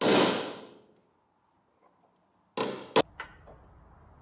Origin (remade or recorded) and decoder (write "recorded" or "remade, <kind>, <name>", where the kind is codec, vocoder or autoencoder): recorded